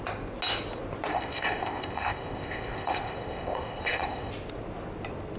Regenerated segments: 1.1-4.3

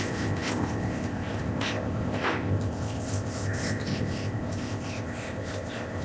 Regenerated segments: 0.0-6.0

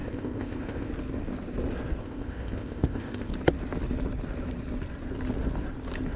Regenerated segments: 0.0-0.9; 2.0-3.3